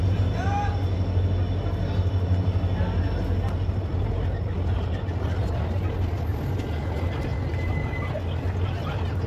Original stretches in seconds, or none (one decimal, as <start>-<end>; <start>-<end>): 0.0-9.3